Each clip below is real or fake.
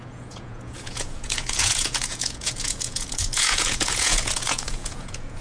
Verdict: fake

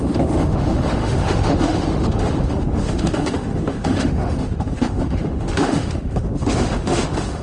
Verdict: fake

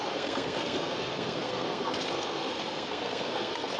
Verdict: fake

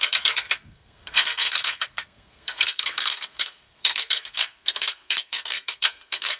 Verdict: fake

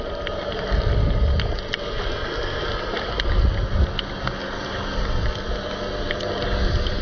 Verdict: real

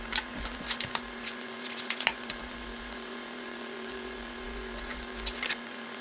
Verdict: fake